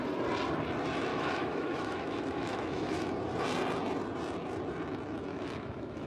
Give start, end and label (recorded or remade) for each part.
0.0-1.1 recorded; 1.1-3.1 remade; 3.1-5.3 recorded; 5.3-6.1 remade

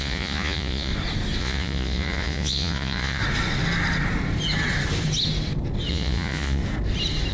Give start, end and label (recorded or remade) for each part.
0.0-0.9 remade; 0.9-1.4 recorded; 1.4-3.2 remade; 3.2-5.9 recorded; 5.9-6.6 remade; 6.6-7.3 recorded

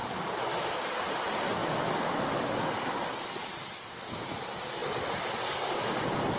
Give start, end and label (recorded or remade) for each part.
0.0-1.6 recorded; 1.6-2.2 remade; 2.2-6.4 recorded

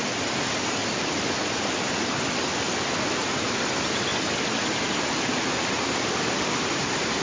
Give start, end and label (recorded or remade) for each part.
0.0-7.2 recorded

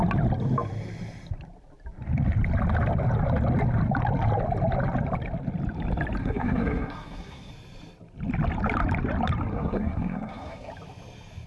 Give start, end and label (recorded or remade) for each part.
0.0-6.2 recorded; 6.2-7.5 remade; 7.5-9.5 recorded; 9.5-10.7 remade; 10.7-11.5 recorded